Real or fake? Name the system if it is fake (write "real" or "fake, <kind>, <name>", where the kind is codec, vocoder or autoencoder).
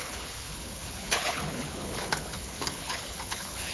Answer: fake, codec, HILCodec